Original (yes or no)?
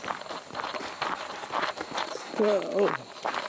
no